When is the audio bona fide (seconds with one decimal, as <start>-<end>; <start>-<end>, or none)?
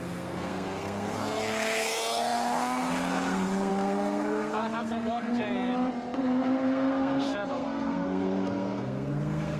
5.7-6.2